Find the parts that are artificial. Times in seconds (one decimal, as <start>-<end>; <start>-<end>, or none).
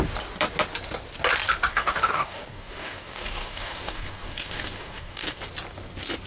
1.7-5.4